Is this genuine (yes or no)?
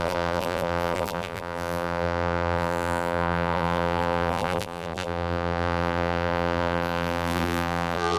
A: no